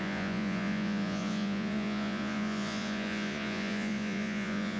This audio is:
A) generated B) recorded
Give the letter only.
A